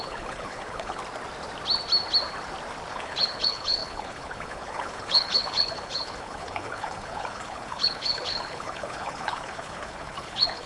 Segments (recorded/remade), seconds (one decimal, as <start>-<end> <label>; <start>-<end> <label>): 0.0-1.0 remade; 1.0-2.9 recorded; 2.9-10.7 remade